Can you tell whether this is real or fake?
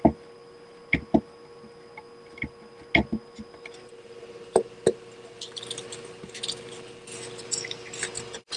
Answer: real